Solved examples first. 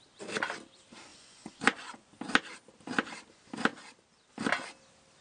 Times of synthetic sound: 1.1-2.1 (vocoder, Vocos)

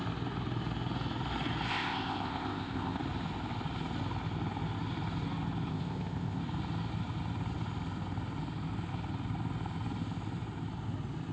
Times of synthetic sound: 1.7-3.0 (codec, ZipCodec); 5.7-6.4

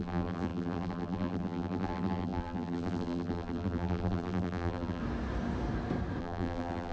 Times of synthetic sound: 0.0-5.0 (vocoder, BigVGAN v2); 6.2-6.9